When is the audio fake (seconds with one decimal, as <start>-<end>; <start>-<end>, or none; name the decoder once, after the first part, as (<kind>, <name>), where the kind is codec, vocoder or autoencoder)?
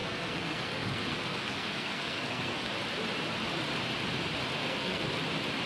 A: 0.0-2.7 (codec, SNAC); 4.6-5.1